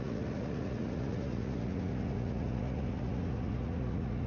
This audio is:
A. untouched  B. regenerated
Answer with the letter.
B